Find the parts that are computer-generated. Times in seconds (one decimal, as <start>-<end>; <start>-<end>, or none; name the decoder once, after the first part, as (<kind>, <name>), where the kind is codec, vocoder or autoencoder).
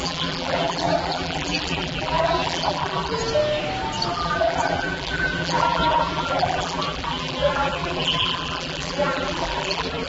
0.0-3.2 (vocoder, BigVGAN v2); 4.1-10.1